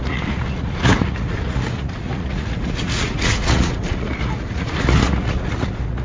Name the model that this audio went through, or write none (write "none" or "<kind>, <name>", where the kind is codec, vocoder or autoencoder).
vocoder, Vocos